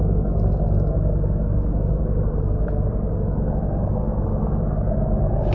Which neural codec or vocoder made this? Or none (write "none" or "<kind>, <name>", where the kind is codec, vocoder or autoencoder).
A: none